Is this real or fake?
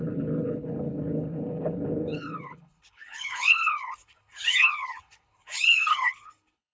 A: fake